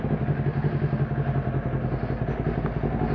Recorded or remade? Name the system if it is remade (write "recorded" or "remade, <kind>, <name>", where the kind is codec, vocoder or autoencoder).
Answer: recorded